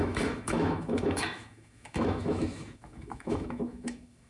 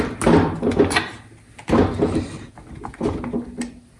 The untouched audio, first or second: second